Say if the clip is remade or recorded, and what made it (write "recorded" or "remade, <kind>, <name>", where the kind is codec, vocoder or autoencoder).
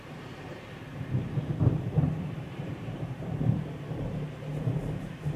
remade, vocoder, BigVGAN v2